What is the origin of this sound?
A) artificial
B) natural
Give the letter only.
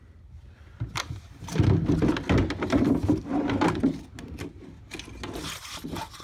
B